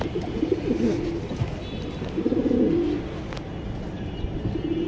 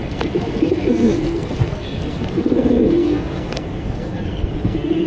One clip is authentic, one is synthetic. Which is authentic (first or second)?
first